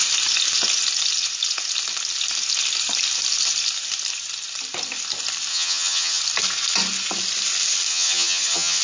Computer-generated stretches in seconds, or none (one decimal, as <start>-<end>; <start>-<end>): 5.5-6.2; 7.9-8.8